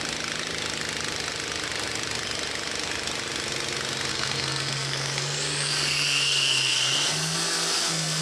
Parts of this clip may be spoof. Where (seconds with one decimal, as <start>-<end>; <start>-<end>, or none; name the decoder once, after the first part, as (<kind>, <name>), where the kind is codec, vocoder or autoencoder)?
4.1-8.2 (codec, SNAC)